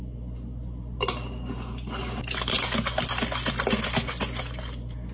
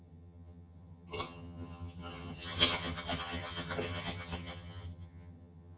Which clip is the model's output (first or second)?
second